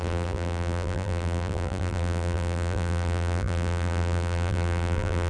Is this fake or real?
fake